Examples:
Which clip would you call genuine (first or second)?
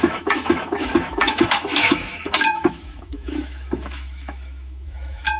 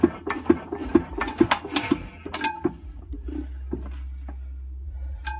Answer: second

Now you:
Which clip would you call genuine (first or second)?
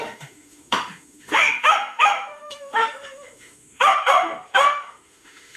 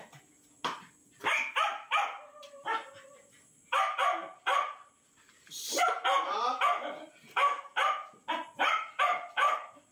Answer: second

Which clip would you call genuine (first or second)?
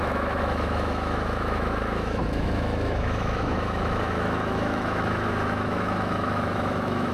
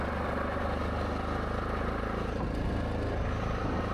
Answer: second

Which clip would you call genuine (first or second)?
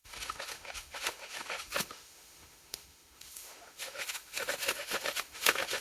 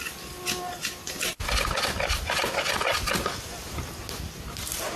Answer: second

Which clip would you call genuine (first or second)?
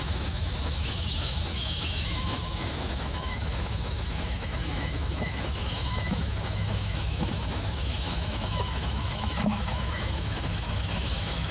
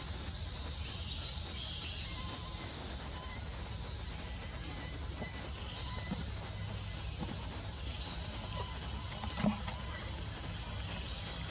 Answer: second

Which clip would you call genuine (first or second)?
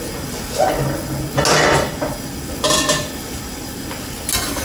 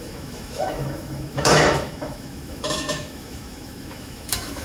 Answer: first